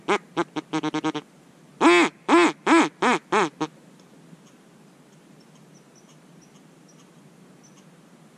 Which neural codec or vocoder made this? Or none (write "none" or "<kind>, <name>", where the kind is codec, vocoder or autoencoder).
none